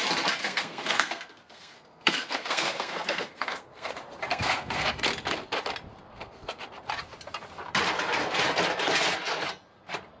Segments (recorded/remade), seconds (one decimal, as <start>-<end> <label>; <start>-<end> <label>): 0.0-0.4 recorded; 0.4-3.9 remade; 3.9-4.3 recorded; 4.3-5.0 remade; 5.0-6.1 recorded; 6.1-6.6 remade; 6.6-10.2 recorded